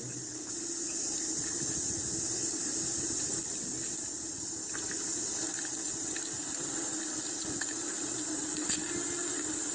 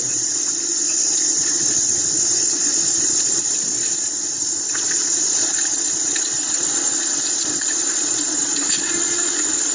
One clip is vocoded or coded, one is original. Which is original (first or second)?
first